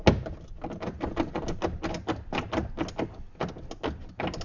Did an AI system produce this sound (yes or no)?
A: no